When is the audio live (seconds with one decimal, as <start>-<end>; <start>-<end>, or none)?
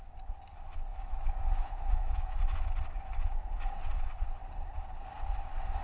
0.0-0.9; 2.4-5.8